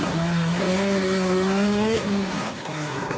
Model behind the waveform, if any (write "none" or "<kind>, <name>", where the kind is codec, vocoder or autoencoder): codec, SNAC